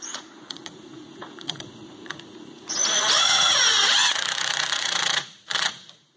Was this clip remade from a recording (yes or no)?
yes